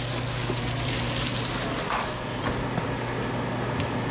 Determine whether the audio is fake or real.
real